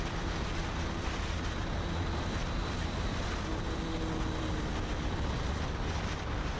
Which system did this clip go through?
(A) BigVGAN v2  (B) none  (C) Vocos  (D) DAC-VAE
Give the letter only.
A